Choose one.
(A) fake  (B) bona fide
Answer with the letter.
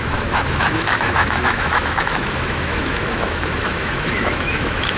A